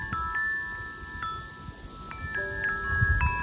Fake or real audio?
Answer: real